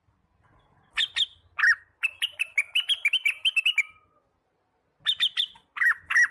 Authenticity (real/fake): real